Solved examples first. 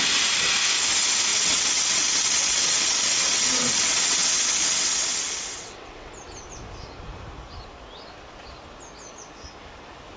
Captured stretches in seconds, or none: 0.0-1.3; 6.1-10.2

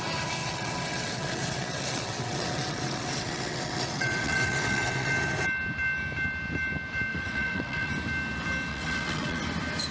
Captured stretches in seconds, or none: 0.0-0.4; 5.1-7.1; 7.9-8.7; 9.4-9.9

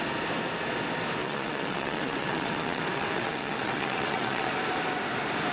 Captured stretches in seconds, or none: 0.0-1.2; 4.5-5.5